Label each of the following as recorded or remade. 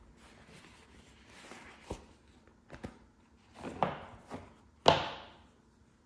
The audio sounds recorded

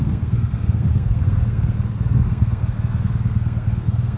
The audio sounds remade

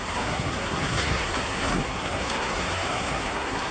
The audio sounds remade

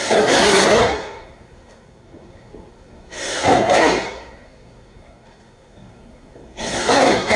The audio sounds remade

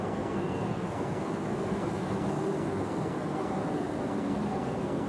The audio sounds remade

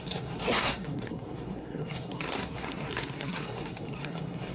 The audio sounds remade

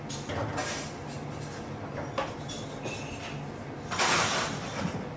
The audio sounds recorded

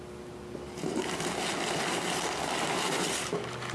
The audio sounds recorded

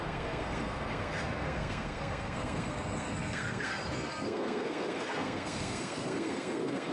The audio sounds remade